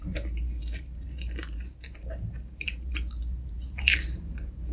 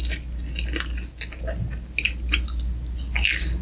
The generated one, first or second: first